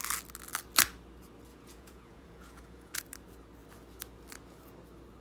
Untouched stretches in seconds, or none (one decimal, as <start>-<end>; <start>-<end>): 0.0-1.5; 3.0-5.2